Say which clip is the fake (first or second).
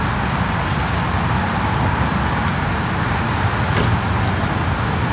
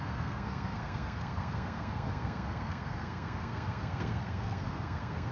second